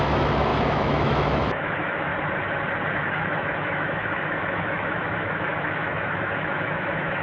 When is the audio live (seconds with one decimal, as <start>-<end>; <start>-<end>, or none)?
2.1-2.9